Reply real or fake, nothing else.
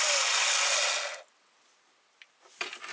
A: real